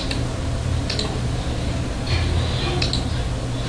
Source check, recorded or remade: recorded